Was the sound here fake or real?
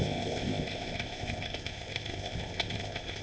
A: fake